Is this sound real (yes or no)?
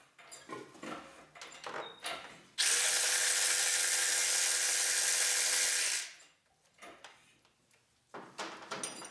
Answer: yes